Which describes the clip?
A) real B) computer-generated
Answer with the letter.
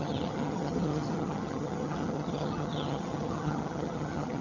B